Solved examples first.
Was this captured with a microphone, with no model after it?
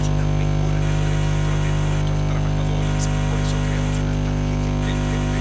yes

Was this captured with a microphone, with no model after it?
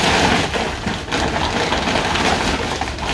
yes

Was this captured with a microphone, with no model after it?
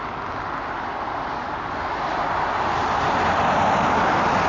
yes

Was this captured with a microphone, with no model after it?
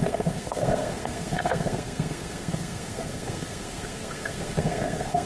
no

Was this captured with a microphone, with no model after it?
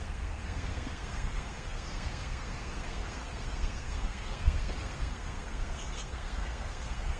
no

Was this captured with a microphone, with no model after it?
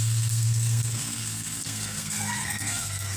no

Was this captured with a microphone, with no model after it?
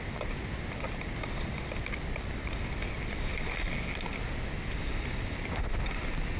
yes